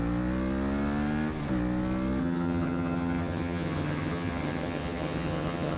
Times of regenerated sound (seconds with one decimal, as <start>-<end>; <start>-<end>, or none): 2.2-5.8